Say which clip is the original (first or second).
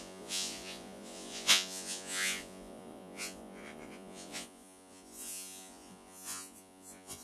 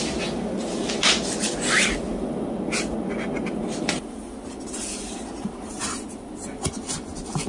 second